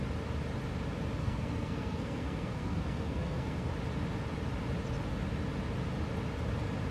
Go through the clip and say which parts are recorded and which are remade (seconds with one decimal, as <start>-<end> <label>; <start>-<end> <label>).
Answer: 0.0-1.2 recorded; 1.2-3.7 remade; 3.7-6.9 recorded